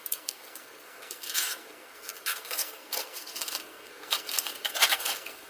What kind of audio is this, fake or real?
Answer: fake